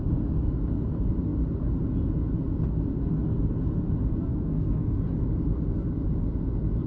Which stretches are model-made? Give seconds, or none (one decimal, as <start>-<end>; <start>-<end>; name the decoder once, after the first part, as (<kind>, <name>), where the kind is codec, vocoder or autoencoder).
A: 4.3-5.0 (codec, SNAC)